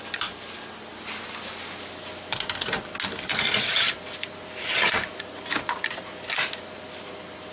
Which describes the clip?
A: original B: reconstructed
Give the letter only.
A